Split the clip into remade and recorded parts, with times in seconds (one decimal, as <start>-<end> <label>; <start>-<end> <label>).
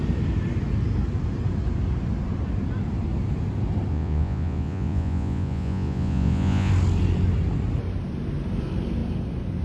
0.0-3.9 recorded; 3.9-6.7 remade; 6.7-9.6 recorded